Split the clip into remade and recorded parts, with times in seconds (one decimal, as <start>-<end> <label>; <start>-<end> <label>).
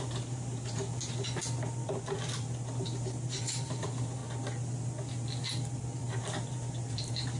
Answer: 0.0-1.4 remade; 1.4-2.8 recorded; 2.8-4.2 remade; 4.2-6.0 recorded; 6.0-7.4 remade